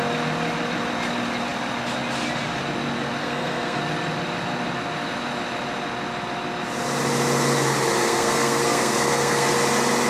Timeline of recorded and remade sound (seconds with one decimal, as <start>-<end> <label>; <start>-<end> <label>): 0.0-3.2 recorded; 3.2-3.8 remade; 3.8-8.0 recorded; 8.0-9.5 remade; 9.5-10.1 recorded